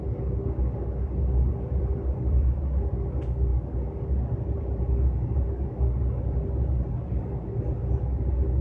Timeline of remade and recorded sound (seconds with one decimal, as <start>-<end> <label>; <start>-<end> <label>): 0.0-1.5 recorded; 1.5-2.9 remade; 2.9-8.6 recorded